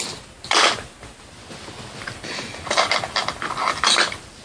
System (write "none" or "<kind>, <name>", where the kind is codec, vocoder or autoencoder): none